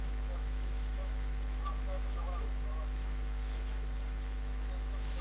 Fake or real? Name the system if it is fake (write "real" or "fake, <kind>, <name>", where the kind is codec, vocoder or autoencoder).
fake, autoencoder, DAC-VAE